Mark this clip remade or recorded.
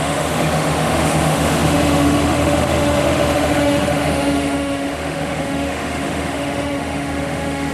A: remade